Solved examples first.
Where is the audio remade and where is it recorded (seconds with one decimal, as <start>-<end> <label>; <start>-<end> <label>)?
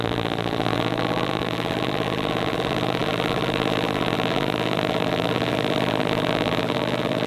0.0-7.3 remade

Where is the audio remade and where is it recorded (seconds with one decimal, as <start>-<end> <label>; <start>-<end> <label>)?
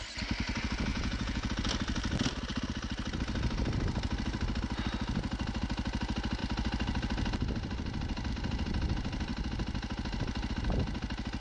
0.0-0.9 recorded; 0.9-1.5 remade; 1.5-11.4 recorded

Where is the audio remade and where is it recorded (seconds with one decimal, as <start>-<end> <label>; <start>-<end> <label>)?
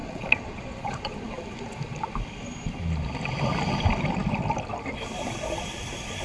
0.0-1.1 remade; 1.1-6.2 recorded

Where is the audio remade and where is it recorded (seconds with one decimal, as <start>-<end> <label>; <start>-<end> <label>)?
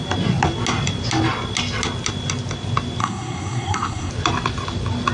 0.0-3.0 recorded; 3.0-4.1 remade; 4.1-5.1 recorded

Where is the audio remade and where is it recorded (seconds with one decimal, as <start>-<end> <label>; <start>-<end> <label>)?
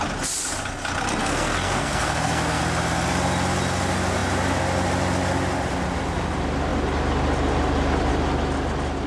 0.0-1.2 recorded; 1.2-2.6 remade; 2.6-9.1 recorded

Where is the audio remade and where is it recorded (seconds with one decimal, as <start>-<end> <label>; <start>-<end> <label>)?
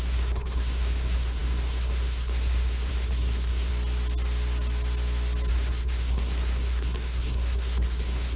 0.0-3.7 remade; 3.7-5.5 recorded; 5.5-8.4 remade